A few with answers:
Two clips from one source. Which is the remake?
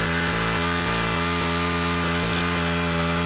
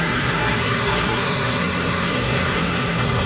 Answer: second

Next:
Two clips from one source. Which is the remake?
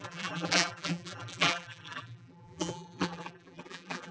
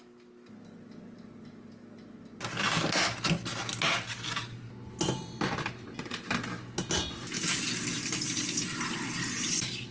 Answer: first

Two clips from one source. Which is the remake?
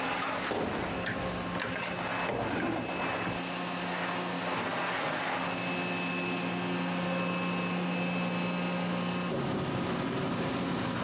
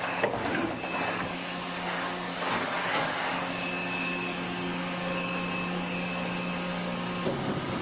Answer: second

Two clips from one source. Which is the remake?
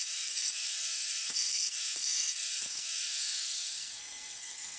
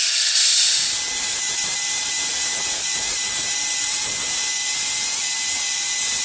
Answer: first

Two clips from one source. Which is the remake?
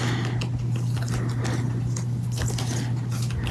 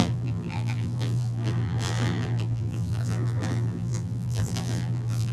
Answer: second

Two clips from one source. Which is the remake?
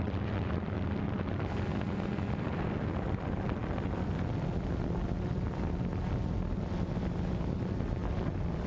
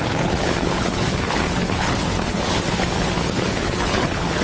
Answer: second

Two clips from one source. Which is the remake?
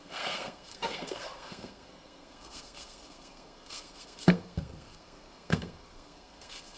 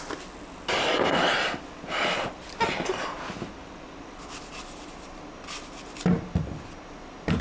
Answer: first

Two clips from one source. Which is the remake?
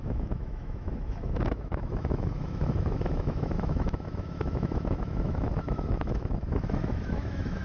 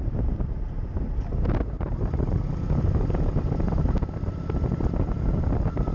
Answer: first